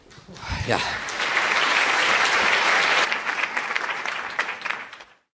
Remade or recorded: remade